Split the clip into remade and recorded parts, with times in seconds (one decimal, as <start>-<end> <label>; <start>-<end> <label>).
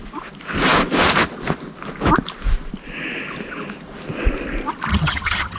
0.0-4.9 recorded; 4.9-5.6 remade